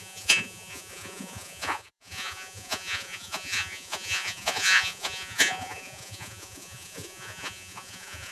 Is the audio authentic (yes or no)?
no